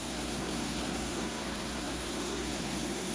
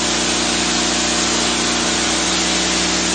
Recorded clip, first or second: second